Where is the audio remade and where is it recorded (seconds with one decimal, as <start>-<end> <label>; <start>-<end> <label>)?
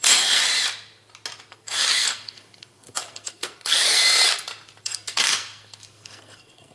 0.0-0.4 remade; 0.4-1.5 recorded; 1.5-4.0 remade; 4.0-4.8 recorded; 4.8-6.7 remade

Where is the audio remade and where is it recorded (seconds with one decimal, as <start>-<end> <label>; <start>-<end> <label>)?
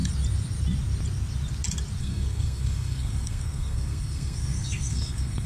0.0-2.0 recorded; 2.0-5.5 remade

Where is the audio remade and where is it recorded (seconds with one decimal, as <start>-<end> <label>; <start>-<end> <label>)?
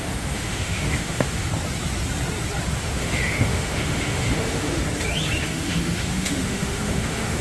0.0-1.5 remade; 1.5-2.8 recorded; 2.8-4.8 remade; 4.8-5.4 recorded; 5.4-7.4 remade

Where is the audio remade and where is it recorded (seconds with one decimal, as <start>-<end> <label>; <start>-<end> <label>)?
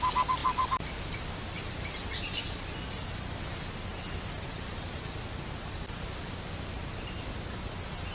0.0-8.1 recorded